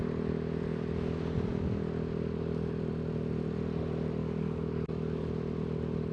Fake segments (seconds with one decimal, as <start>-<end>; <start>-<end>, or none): 4.2-5.3